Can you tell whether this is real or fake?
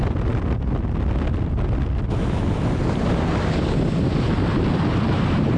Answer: real